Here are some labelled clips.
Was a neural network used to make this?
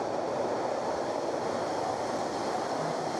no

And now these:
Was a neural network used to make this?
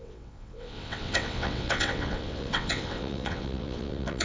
yes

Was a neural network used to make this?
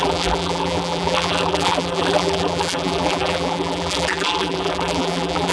yes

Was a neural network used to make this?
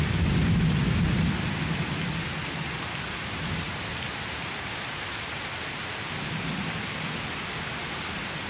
no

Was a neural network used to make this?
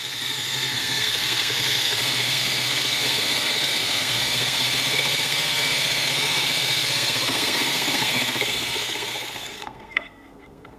yes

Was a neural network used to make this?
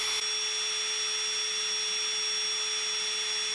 no